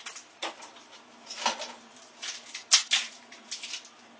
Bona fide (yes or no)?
yes